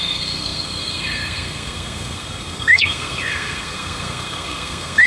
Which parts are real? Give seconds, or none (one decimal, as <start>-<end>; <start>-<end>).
none